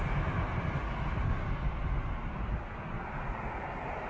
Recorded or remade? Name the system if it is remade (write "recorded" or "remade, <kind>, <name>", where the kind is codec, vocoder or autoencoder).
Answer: recorded